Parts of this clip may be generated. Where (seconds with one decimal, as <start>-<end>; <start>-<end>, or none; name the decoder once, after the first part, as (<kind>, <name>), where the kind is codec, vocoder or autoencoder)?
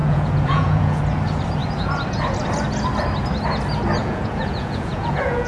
0.0-1.0 (vocoder, Vocos); 4.0-5.5